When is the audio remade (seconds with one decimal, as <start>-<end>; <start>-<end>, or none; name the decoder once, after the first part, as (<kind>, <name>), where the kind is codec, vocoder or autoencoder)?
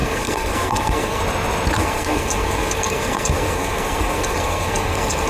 0.0-1.2 (codec, SNAC); 1.8-5.3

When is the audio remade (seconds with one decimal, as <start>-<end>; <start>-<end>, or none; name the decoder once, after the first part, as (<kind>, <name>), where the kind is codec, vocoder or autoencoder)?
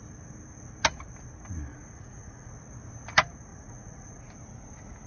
1.7-2.5 (vocoder, Vocos); 3.5-4.2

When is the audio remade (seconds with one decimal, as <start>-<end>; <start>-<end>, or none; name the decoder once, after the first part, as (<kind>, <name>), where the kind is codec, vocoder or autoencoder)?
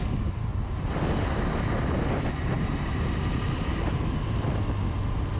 0.5-1.5 (vocoder, BigVGAN v2)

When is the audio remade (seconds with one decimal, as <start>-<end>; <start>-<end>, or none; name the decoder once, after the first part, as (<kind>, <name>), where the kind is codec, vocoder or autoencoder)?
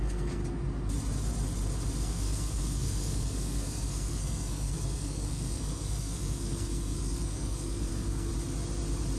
0.0-0.4 (codec, SNAC); 2.0-8.3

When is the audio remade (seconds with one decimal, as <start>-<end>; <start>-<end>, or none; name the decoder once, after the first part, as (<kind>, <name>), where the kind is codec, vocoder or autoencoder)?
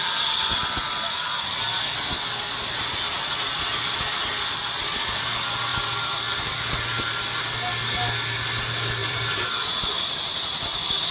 9.0-11.1 (vocoder, BigVGAN v2)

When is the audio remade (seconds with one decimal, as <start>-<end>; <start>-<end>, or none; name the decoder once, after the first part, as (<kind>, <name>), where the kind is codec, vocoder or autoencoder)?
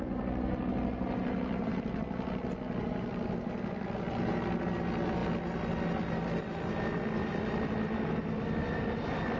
none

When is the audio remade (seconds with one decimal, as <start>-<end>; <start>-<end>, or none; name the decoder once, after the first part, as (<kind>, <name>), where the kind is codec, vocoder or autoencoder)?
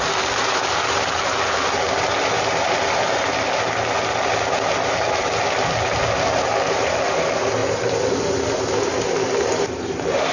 none